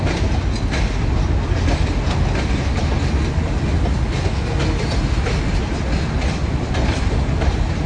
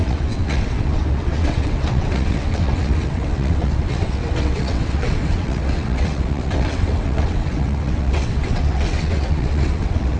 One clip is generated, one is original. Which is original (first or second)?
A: first